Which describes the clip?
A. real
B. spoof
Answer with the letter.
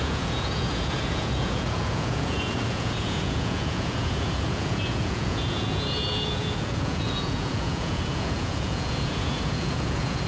B